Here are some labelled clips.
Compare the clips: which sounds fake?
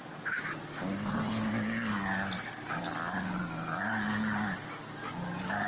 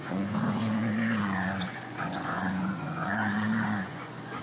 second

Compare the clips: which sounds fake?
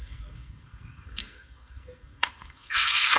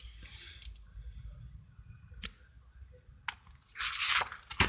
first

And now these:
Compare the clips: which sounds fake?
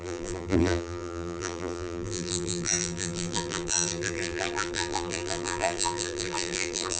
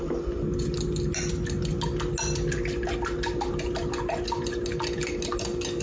first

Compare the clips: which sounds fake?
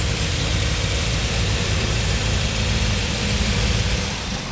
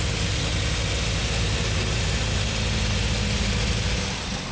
first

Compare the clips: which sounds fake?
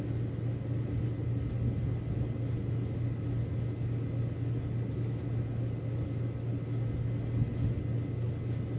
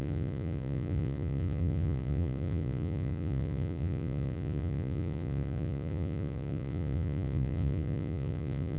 second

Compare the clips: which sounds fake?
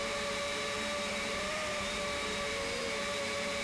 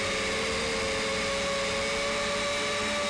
first